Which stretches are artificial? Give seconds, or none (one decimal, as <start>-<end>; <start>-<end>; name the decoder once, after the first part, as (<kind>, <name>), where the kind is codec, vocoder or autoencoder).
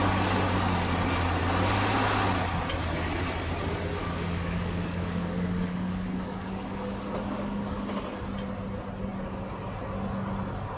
4.0-7.9 (codec, DAC)